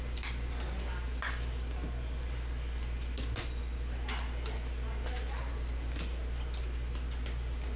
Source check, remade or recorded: recorded